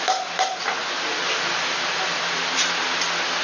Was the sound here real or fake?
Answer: real